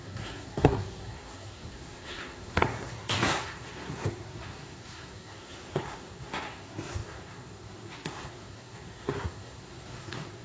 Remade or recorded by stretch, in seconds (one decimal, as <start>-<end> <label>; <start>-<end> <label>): 0.0-10.4 remade